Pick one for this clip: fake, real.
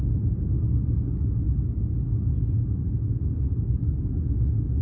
real